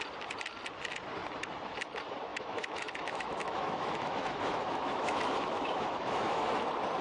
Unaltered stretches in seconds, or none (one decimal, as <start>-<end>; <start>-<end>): 0.0-2.3; 6.5-7.0